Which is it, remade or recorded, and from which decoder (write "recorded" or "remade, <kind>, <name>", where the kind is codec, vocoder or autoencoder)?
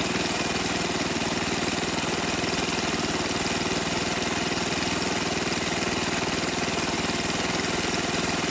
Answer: recorded